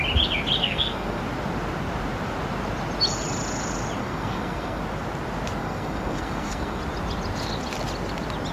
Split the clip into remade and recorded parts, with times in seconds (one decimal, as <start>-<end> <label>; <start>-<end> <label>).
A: 0.0-0.6 recorded; 0.6-1.2 remade; 1.2-4.0 recorded; 4.0-4.8 remade; 4.8-5.6 recorded; 5.6-6.8 remade; 6.8-8.5 recorded